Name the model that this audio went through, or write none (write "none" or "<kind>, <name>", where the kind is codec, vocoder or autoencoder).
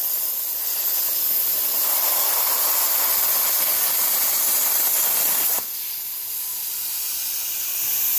none